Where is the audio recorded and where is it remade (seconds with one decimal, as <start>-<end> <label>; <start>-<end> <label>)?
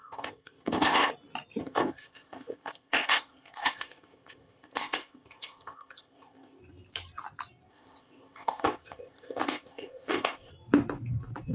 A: 0.0-1.1 remade; 1.1-1.6 recorded; 1.6-6.6 remade; 6.6-7.7 recorded; 7.7-10.5 remade; 10.5-11.5 recorded